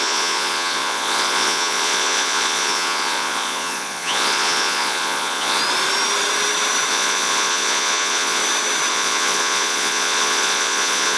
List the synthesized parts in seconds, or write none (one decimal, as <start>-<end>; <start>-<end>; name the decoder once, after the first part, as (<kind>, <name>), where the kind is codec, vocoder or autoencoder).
0.0-5.6 (vocoder, Vocos); 6.9-8.4; 8.9-11.2